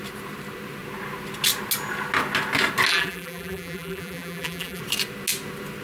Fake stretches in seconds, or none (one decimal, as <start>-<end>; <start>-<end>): 2.9-4.8